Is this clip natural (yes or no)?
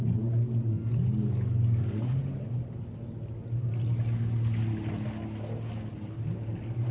yes